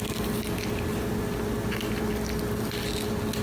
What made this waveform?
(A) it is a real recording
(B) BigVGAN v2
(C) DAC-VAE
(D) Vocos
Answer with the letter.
A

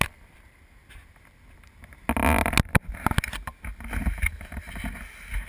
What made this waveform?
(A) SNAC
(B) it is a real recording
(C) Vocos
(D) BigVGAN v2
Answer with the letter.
B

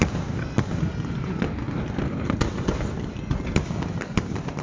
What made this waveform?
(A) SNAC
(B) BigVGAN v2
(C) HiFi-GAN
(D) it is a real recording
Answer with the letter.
D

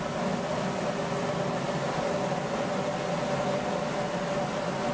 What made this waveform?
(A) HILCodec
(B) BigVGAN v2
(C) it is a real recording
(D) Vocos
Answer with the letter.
C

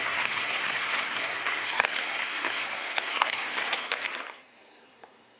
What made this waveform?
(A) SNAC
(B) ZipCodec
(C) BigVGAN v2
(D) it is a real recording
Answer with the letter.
A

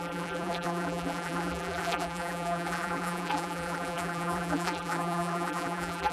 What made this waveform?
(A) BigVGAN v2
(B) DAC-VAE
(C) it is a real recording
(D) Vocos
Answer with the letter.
A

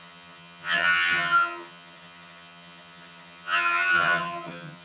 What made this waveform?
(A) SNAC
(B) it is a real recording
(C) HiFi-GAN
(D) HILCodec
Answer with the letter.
C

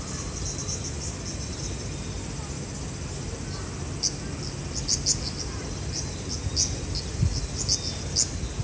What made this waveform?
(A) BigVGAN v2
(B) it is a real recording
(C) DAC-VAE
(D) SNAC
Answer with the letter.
B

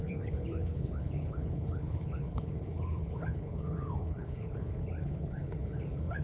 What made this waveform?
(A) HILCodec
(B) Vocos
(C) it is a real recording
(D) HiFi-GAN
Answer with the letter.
A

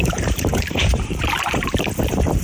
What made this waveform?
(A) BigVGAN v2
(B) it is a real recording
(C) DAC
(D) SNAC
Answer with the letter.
A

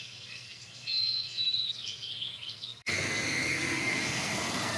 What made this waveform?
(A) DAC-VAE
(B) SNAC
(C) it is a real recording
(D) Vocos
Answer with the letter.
B